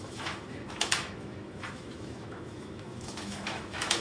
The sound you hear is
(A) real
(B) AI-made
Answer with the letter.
B